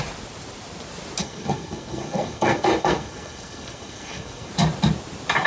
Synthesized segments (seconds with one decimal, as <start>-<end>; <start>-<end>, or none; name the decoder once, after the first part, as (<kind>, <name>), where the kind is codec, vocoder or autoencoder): 1.2-4.5 (codec, SNAC)